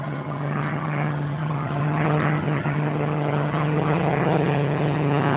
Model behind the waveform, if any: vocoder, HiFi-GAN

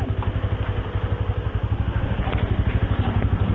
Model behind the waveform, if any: none